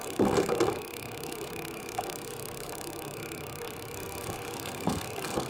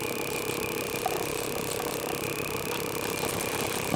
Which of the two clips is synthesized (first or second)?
first